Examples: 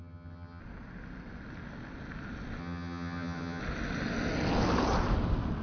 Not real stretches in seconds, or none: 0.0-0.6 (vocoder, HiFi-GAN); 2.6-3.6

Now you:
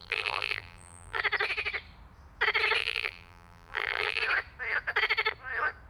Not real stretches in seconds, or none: 0.0-1.2 (vocoder, BigVGAN v2); 2.8-4.2

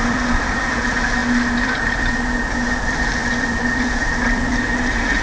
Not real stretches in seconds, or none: 0.0-5.2 (vocoder, BigVGAN v2)

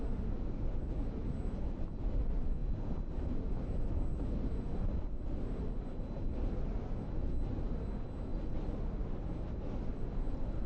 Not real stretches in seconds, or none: none

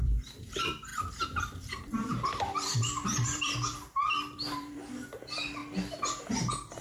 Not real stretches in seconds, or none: 0.0-5.6 (vocoder, BigVGAN v2)

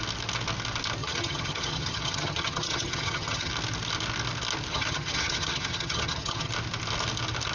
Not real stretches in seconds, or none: 1.0-3.5 (vocoder, HiFi-GAN); 4.7-6.5